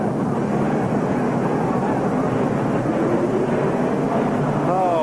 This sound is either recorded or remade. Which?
recorded